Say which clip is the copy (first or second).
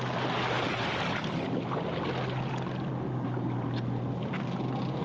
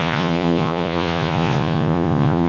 second